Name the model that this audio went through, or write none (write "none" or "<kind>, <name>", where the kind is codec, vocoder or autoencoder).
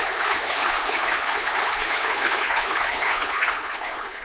codec, HILCodec